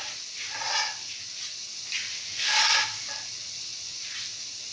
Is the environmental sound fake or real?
real